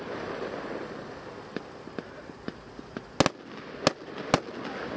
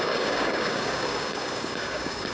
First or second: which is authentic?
first